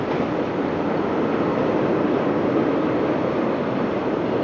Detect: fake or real real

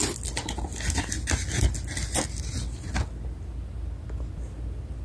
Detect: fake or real real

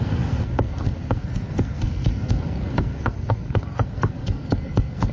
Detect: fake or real fake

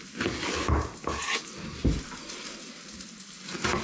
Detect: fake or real real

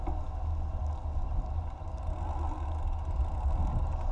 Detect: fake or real real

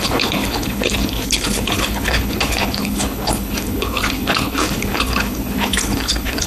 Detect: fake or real fake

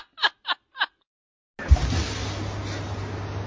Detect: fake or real real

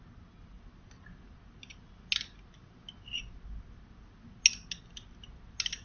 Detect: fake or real real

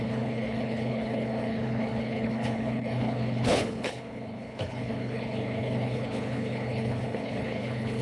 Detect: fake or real fake